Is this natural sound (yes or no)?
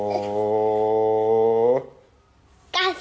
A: yes